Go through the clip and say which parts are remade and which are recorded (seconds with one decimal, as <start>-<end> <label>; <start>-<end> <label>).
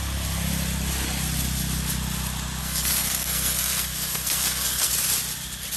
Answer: 0.0-2.6 recorded; 2.6-4.9 remade; 4.9-5.8 recorded